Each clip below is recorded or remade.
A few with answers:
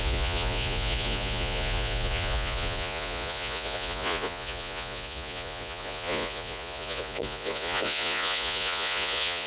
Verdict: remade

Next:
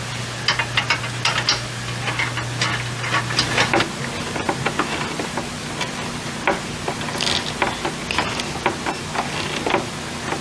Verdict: recorded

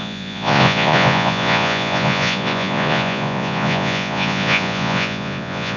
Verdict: remade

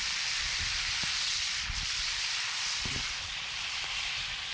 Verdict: recorded